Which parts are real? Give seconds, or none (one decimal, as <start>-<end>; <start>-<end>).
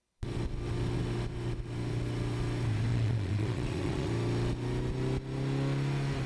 0.0-2.9; 4.1-6.3